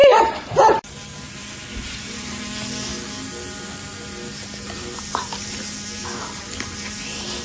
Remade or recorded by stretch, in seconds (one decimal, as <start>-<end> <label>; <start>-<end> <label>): 0.0-7.4 recorded